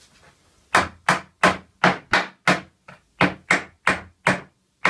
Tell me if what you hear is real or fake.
real